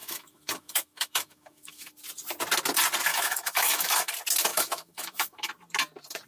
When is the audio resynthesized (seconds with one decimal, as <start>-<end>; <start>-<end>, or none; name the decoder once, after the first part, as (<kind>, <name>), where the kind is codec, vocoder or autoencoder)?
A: 0.0-1.9 (autoencoder, DAC-VAE); 3.1-4.1; 4.5-5.5